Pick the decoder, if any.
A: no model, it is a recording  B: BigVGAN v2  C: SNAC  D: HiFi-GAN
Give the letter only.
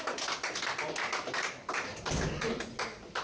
A